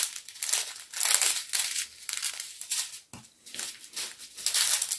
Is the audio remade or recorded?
recorded